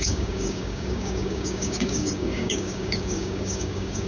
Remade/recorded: remade